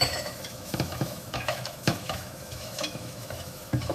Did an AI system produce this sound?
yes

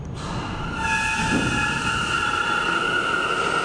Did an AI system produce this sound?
no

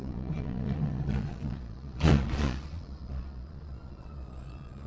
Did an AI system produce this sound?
yes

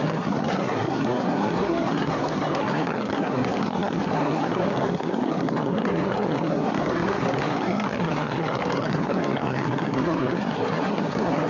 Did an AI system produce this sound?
yes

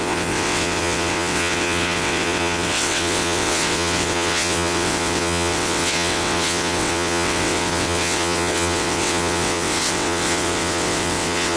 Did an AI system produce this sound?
yes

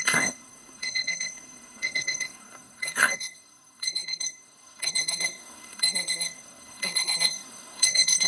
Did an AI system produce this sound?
yes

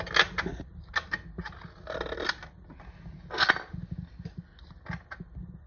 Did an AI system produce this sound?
no